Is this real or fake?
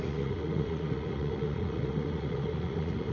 fake